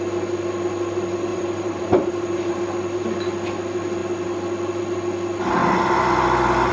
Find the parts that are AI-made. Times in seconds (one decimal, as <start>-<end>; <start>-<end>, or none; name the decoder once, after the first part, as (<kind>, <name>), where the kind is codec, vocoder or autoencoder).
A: 1.3-2.6 (vocoder, BigVGAN v2)